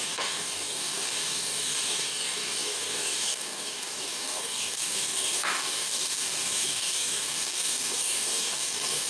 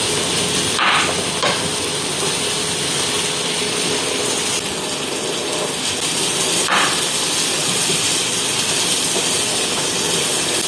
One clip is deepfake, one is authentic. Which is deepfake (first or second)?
first